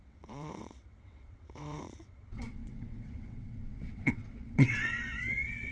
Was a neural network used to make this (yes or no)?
yes